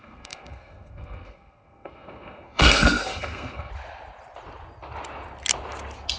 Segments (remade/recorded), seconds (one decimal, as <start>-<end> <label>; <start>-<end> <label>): 0.0-3.7 remade; 3.7-6.2 recorded